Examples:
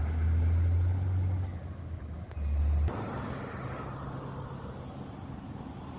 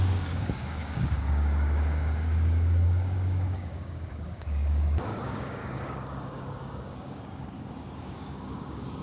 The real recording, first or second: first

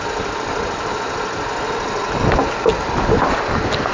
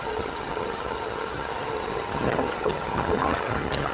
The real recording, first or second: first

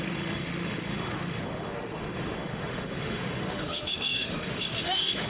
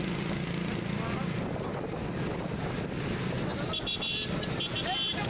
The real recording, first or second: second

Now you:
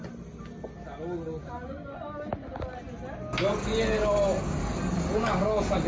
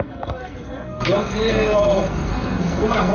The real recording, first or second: first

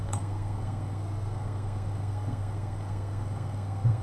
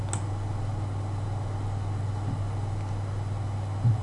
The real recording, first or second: second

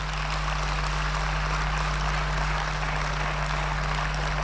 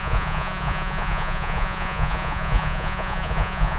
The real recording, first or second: first